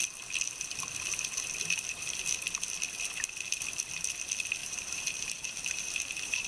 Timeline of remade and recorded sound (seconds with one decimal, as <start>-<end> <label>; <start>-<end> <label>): 0.0-4.6 recorded; 4.6-6.5 remade